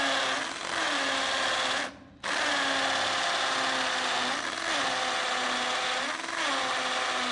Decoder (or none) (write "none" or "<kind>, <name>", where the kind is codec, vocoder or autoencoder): none